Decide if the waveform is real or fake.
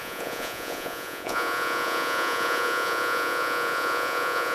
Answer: fake